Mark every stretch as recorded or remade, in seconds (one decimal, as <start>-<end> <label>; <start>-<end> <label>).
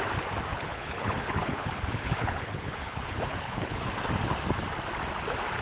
0.0-0.5 recorded; 0.5-3.9 remade; 3.9-5.6 recorded